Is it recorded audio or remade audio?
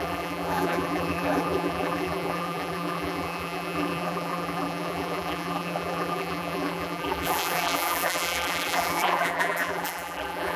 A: remade